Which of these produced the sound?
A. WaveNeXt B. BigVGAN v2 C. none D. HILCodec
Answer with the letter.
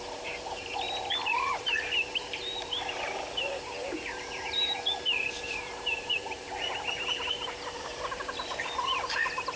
B